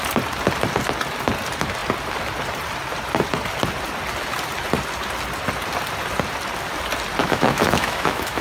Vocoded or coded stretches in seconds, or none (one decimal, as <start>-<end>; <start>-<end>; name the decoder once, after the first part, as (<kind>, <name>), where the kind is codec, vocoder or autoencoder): 7.2-8.4 (autoencoder, DAC-VAE)